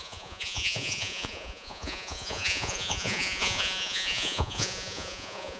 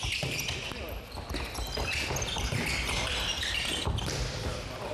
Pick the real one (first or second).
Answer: second